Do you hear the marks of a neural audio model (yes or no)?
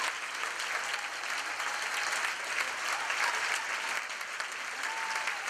no